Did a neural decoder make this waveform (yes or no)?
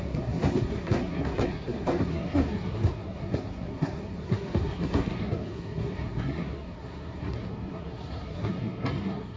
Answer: yes